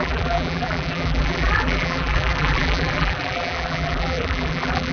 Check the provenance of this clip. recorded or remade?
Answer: remade